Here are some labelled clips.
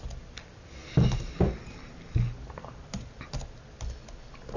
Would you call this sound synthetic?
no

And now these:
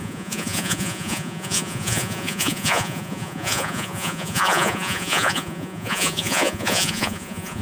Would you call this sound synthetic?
yes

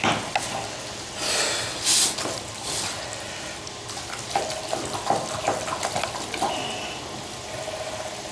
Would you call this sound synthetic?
no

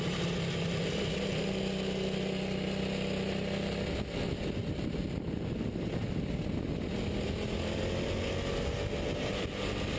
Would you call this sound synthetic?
no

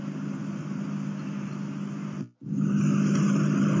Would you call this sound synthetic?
no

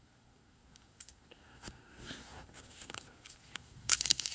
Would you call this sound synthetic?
yes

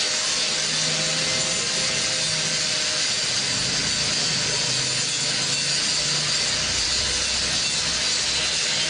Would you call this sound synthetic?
no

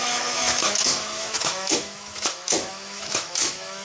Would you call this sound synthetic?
yes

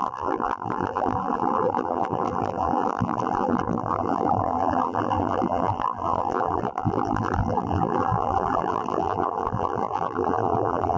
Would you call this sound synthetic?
yes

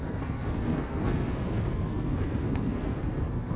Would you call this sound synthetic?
yes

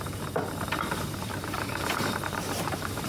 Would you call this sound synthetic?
yes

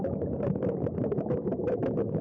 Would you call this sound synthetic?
yes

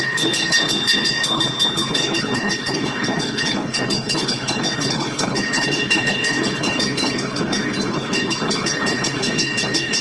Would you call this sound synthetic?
yes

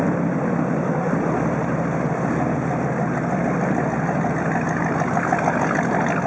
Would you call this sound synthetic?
no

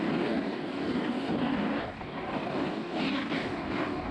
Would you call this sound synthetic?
yes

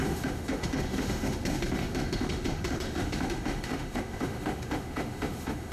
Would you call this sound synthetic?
yes